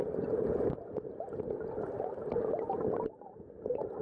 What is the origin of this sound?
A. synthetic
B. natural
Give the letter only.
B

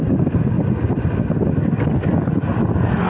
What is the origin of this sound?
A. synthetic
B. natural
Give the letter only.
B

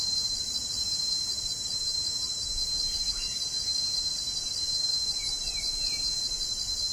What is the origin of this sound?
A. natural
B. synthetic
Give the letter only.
A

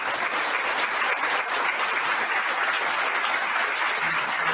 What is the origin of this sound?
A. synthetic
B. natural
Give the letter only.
B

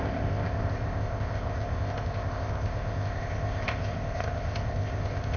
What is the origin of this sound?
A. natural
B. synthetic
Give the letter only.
B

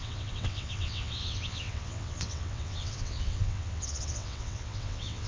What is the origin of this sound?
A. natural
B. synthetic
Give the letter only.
B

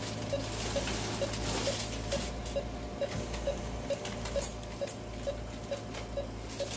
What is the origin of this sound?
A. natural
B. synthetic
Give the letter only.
A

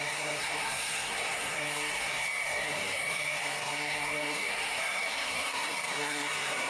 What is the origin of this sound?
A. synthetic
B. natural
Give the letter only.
A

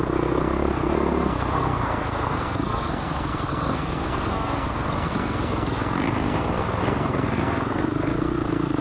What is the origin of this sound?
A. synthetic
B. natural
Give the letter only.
A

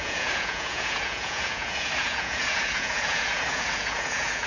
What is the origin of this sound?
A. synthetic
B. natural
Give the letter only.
A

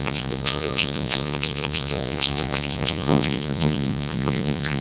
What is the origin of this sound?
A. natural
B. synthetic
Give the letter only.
B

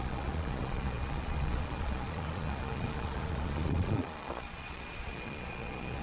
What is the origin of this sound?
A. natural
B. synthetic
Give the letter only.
B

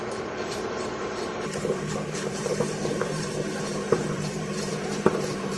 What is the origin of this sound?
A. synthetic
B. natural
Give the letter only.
A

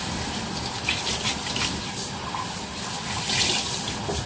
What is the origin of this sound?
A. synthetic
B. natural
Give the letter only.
B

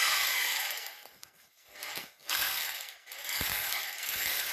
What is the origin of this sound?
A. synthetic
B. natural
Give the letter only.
A